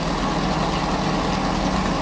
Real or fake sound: real